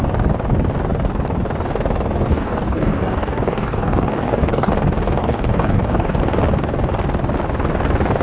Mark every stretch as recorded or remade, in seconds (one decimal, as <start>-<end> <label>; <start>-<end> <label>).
0.0-2.3 recorded; 2.3-4.7 remade; 4.7-5.2 recorded; 5.2-6.2 remade; 6.2-8.2 recorded